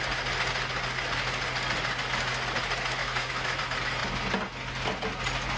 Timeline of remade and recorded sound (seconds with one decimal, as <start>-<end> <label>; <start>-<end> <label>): 0.0-3.0 recorded; 3.0-3.6 remade; 3.6-5.6 recorded